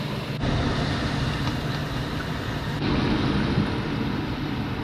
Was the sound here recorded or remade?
recorded